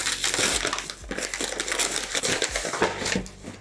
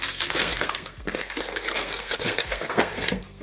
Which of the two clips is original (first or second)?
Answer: first